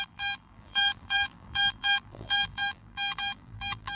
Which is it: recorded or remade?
remade